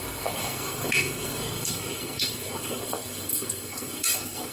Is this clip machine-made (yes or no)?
yes